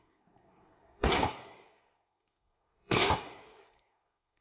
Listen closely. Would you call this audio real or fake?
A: fake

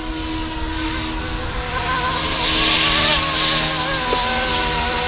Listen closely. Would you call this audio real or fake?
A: real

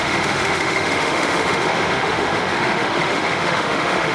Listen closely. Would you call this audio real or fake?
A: fake